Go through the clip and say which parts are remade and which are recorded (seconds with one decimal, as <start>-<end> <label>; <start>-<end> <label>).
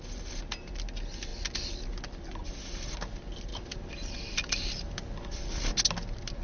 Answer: 0.0-6.4 recorded